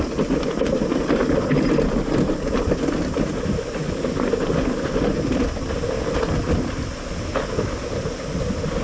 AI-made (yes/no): no